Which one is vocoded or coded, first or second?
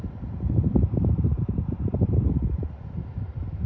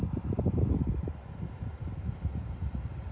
first